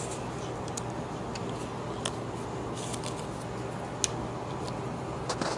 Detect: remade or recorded recorded